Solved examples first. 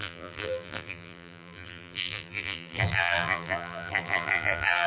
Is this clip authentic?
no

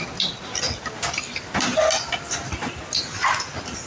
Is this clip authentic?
yes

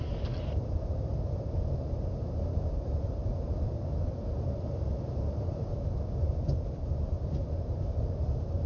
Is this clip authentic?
yes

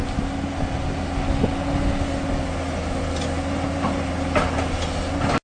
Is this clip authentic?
yes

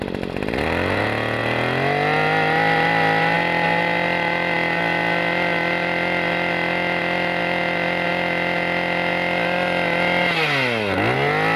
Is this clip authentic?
yes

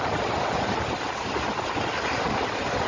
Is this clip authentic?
yes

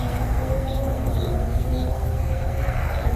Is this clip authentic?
no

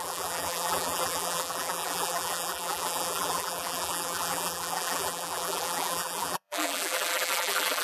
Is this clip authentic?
no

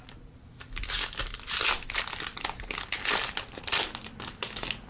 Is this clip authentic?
yes